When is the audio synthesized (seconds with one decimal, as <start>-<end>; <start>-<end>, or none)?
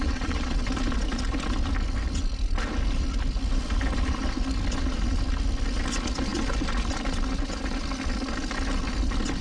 0.0-0.5